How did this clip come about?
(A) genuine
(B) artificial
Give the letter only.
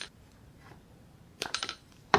B